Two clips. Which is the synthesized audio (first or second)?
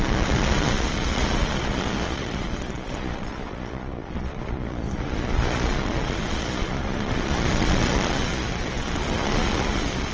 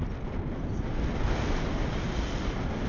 first